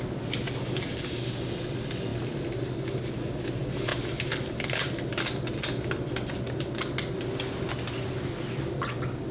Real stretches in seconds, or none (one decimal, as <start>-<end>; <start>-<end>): 0.0-9.3